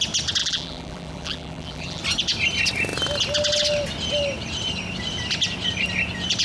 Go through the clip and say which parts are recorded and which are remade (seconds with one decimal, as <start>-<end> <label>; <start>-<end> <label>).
0.0-0.4 recorded; 0.4-2.0 remade; 2.0-6.4 recorded